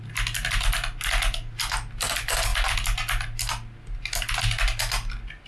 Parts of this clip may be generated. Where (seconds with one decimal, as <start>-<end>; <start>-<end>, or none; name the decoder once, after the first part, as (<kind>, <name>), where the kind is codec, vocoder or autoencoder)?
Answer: none